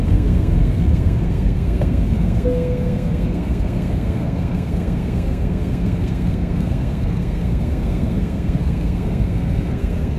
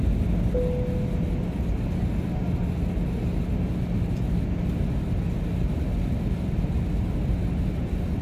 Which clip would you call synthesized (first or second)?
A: first